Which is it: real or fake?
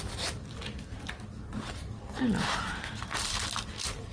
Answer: real